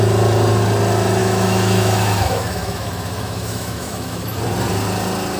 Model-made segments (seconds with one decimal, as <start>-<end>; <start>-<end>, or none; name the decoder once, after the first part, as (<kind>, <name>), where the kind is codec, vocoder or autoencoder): 1.2-4.4 (autoencoder, DAC-VAE)